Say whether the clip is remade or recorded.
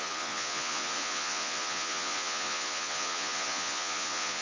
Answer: remade